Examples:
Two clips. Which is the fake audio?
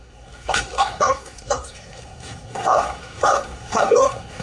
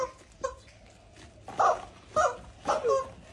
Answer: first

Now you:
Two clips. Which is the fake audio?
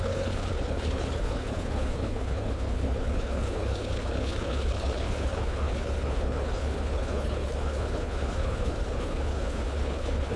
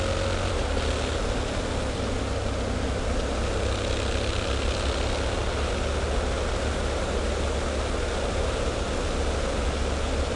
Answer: first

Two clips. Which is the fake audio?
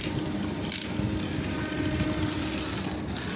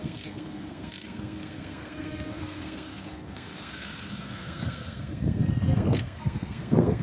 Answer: second